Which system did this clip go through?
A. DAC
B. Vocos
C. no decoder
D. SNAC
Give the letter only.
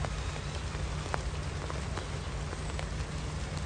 C